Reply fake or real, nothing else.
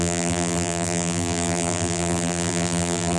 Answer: fake